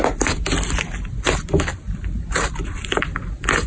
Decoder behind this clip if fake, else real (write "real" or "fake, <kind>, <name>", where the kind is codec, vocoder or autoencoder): real